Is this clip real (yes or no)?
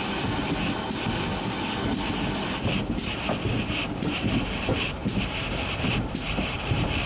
yes